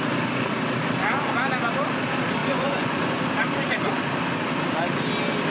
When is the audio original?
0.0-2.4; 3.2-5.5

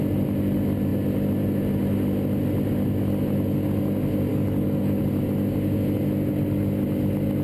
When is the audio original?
0.0-4.3; 5.0-7.4